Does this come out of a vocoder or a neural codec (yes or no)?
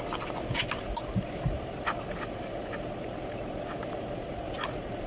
no